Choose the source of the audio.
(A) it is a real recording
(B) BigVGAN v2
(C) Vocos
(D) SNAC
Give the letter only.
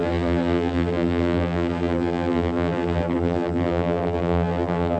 B